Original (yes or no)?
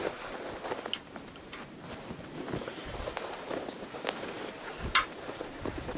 yes